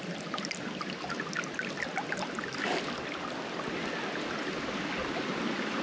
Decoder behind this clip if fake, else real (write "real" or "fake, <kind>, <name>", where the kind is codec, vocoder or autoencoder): real